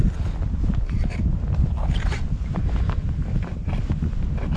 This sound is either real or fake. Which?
real